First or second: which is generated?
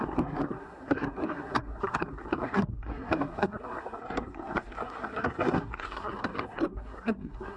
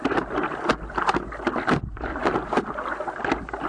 first